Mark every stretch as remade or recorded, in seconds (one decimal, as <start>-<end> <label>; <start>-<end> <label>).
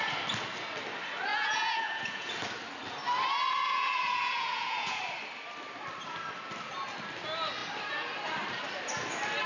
0.0-1.3 recorded; 1.3-2.3 remade; 2.3-3.5 recorded; 3.5-5.0 remade; 5.0-9.5 recorded